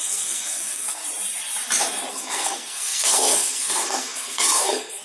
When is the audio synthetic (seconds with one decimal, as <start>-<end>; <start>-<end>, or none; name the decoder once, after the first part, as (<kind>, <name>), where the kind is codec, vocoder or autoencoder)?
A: 0.0-1.0 (codec, SNAC); 2.1-5.0